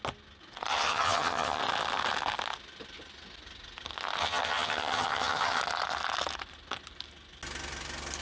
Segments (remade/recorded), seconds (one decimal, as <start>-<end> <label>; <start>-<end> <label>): 0.0-0.7 recorded; 0.7-1.6 remade; 1.6-4.2 recorded; 4.2-5.6 remade; 5.6-8.2 recorded